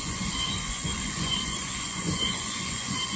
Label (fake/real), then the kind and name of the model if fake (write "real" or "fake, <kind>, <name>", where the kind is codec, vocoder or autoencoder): fake, vocoder, Vocos